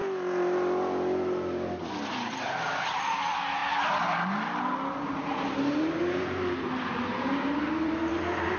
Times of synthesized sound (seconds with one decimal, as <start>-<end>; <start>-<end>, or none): 7.1-8.6